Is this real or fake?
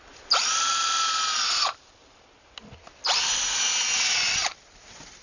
real